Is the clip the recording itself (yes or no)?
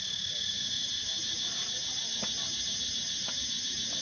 yes